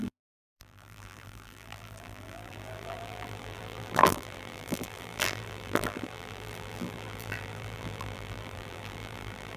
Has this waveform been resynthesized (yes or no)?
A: yes